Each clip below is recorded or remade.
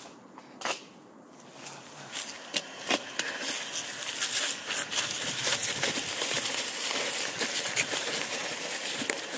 recorded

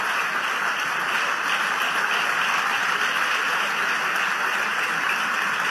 recorded